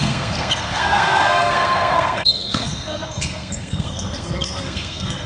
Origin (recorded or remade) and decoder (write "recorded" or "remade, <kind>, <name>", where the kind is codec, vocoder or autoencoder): remade, codec, SNAC